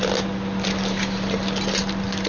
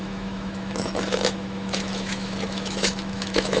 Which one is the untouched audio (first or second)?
first